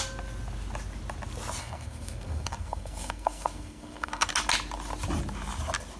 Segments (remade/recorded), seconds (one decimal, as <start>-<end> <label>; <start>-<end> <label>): 0.0-1.6 recorded; 1.6-4.3 remade; 4.3-6.0 recorded